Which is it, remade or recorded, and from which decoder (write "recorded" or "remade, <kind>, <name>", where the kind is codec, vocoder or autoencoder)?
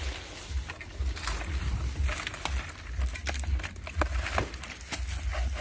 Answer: recorded